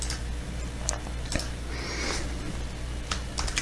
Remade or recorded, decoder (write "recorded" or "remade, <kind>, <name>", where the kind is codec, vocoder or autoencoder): recorded